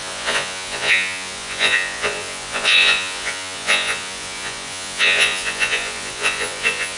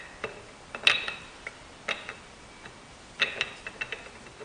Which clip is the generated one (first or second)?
first